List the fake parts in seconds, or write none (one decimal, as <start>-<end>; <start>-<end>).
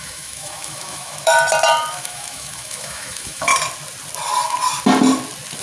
0.0-1.3; 1.9-3.5